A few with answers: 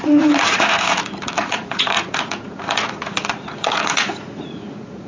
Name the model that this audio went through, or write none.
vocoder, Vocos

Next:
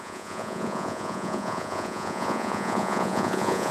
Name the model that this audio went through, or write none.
vocoder, Vocos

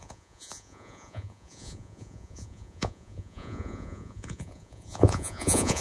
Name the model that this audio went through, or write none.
vocoder, Vocos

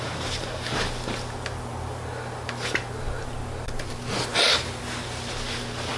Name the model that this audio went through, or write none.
none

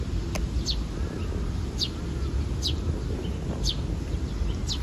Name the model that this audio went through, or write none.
none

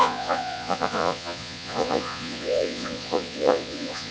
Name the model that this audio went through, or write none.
vocoder, Vocos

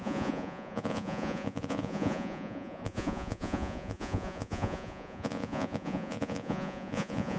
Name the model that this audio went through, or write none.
vocoder, Vocos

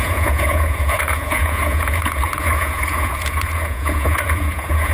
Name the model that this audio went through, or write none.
vocoder, Vocos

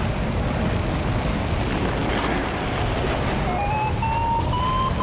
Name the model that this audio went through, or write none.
none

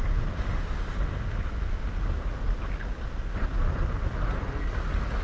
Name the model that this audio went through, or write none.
none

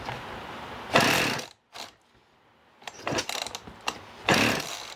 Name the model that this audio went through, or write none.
none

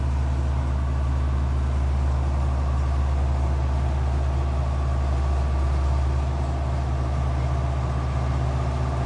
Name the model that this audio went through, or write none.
none